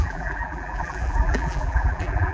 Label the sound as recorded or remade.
remade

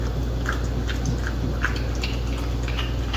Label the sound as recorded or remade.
recorded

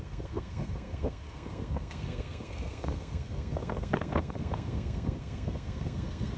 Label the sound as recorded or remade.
remade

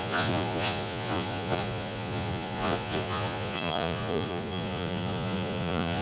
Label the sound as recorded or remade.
remade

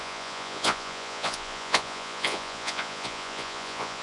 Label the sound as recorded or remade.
remade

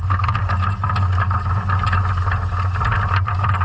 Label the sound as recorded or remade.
recorded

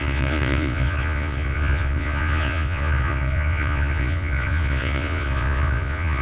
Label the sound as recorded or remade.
remade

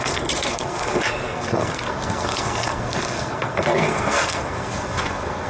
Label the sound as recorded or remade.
remade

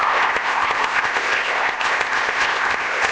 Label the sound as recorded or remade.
remade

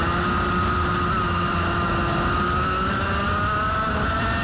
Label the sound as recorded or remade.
recorded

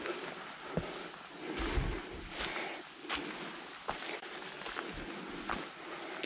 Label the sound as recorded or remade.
recorded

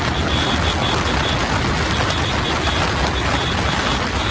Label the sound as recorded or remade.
recorded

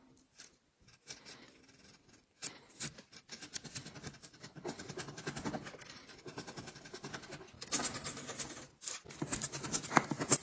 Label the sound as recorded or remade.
recorded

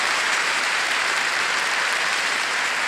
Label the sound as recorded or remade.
remade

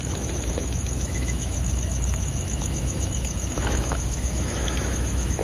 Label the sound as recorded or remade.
remade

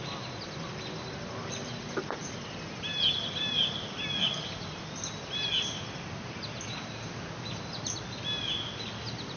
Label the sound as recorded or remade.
recorded